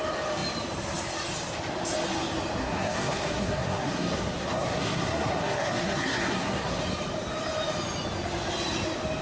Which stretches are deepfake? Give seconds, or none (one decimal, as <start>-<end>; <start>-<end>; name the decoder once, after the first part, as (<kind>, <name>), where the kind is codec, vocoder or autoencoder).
2.6-6.8 (codec, SNAC)

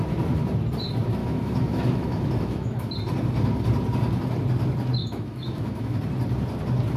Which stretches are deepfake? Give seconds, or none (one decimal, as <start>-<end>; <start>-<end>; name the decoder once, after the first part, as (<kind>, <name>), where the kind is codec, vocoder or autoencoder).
1.2-2.9 (autoencoder, DAC-VAE); 5.0-6.0

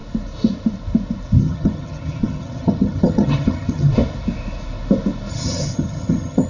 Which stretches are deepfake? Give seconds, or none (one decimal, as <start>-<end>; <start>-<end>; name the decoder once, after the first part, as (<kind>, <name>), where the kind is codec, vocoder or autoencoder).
1.4-3.9 (vocoder, HiFi-GAN); 5.3-6.5

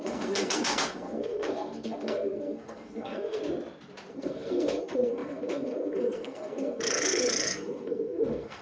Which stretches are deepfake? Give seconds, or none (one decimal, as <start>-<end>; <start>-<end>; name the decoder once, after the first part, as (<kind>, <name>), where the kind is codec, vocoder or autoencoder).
0.0-3.4 (codec, SNAC); 4.1-8.6

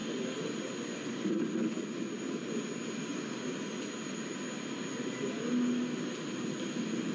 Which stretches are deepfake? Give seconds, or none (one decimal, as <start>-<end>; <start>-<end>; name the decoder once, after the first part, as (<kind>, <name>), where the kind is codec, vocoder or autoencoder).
none

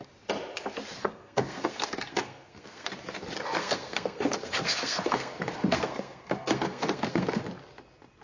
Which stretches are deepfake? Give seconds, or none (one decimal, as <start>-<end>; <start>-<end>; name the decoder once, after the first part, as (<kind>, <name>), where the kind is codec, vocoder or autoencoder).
1.0-2.9 (codec, SNAC); 3.6-7.4

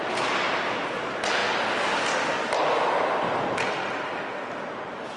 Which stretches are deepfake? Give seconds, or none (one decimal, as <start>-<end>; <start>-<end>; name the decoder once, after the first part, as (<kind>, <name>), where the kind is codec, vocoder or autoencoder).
none

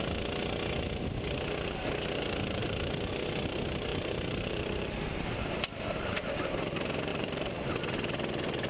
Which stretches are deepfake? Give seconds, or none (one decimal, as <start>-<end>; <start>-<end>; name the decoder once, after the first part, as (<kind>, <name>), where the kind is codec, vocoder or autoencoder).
3.9-6.2 (vocoder, BigVGAN v2); 7.1-7.8